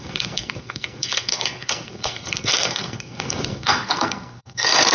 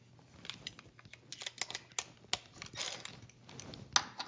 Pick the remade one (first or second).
first